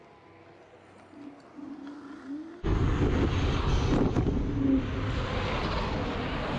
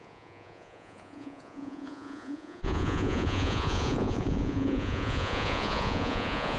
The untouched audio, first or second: first